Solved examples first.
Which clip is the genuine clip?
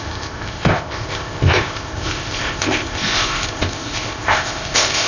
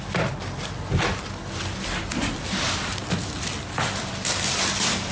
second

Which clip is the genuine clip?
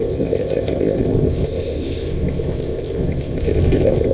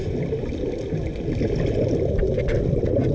second